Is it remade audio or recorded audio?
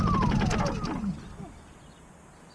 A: recorded